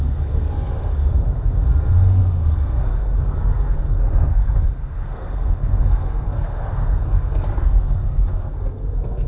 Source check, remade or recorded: remade